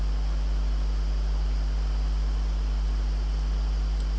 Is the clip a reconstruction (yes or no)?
no